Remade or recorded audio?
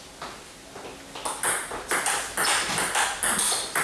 recorded